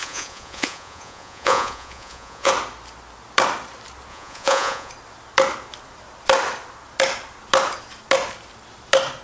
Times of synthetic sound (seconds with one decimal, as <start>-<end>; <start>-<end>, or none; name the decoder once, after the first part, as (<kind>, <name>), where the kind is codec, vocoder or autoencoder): 0.0-2.5 (vocoder, Vocos); 4.1-4.9